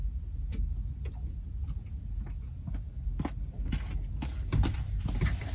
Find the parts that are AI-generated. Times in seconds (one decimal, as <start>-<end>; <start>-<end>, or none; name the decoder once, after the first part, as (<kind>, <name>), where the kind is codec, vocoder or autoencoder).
none